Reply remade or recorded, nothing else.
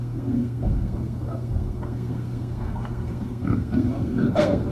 remade